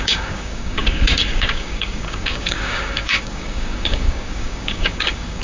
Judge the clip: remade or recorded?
remade